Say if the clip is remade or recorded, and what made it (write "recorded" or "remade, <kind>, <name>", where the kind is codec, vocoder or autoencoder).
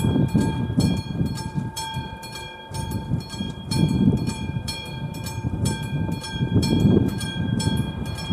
remade, vocoder, BigVGAN v2